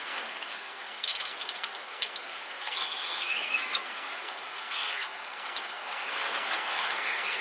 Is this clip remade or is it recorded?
remade